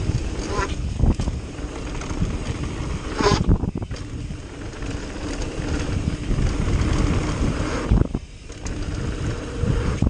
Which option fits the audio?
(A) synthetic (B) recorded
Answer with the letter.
B